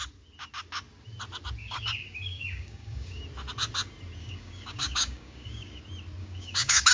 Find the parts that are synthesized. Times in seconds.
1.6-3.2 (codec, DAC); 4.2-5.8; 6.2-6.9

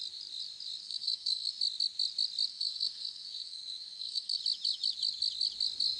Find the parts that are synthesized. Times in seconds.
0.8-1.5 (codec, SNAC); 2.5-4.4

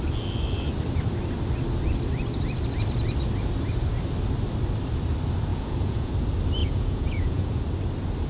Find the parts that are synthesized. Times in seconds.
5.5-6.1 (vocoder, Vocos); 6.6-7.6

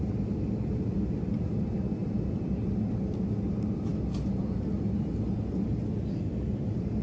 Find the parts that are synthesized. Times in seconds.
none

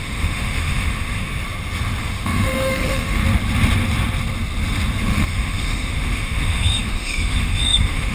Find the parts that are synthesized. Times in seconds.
0.0-1.3 (autoencoder, DAC-VAE); 2.0-3.2; 5.0-8.1

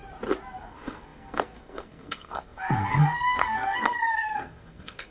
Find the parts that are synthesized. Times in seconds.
0.6-5.1 (codec, SNAC)